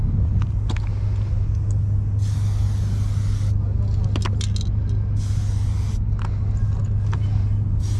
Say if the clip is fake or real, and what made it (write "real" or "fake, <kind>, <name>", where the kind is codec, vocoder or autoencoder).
real